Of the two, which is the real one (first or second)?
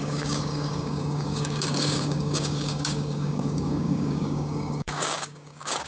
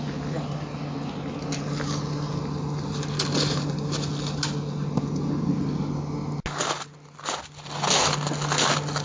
second